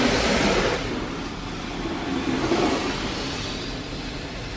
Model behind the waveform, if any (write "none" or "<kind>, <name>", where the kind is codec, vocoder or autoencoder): none